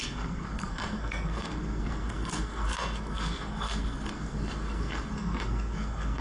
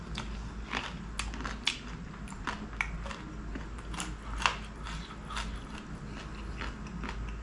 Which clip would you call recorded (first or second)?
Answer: second